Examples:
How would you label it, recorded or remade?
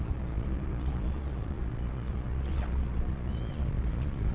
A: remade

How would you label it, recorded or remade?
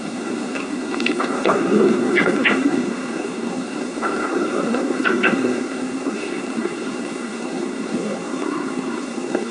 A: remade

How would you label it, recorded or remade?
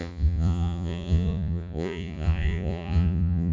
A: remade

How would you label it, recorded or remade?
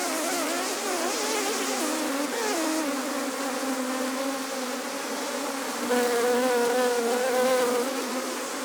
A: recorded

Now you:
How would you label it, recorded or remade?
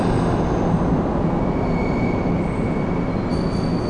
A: recorded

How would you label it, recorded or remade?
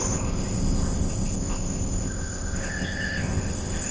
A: remade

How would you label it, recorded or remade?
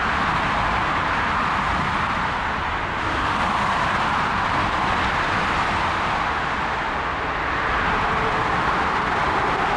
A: recorded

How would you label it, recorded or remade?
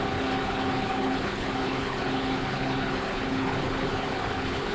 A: remade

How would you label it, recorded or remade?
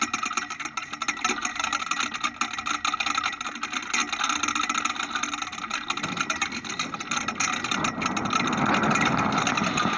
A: recorded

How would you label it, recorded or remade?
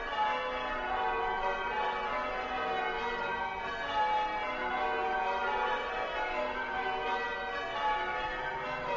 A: recorded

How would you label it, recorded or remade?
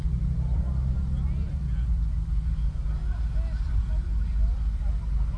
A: recorded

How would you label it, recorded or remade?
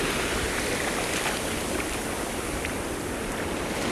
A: recorded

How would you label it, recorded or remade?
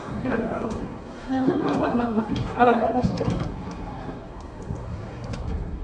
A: remade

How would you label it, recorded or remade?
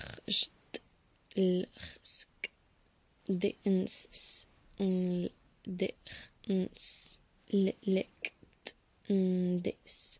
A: recorded